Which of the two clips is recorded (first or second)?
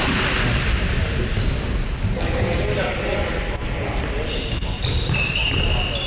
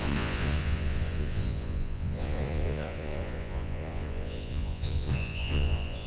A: first